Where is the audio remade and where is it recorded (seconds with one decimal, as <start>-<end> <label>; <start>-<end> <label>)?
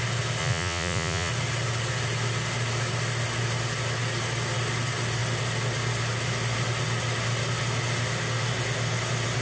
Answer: 0.0-0.4 recorded; 0.4-1.3 remade; 1.3-9.4 recorded